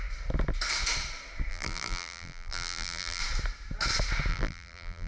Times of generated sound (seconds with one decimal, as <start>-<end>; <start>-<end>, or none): 1.5-3.2; 4.3-5.1